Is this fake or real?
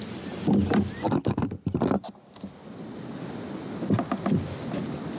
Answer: real